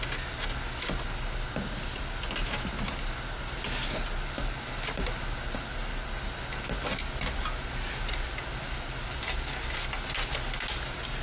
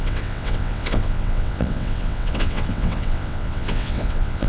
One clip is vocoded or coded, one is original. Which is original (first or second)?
first